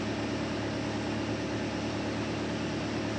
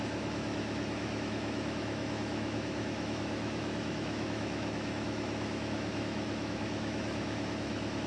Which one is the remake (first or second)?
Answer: second